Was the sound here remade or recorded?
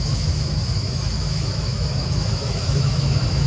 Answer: remade